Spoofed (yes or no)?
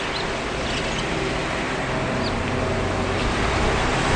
no